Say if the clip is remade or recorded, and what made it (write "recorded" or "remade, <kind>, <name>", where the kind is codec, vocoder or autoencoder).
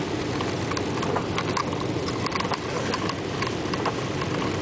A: recorded